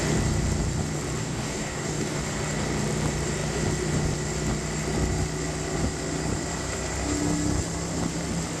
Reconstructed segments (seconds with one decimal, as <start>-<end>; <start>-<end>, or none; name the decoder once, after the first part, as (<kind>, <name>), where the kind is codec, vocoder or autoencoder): 1.2-2.2 (codec, DAC)